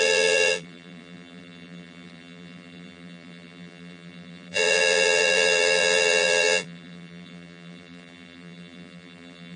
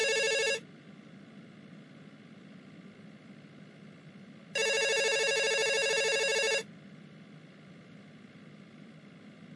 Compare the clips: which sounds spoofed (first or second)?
first